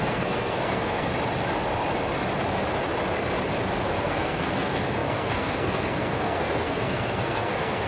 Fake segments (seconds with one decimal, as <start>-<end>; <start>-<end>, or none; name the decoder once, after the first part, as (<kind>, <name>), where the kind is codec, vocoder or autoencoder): 0.0-1.1 (codec, SNAC); 3.9-7.9